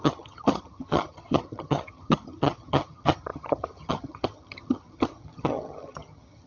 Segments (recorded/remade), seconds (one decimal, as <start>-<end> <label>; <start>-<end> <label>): 0.0-6.5 remade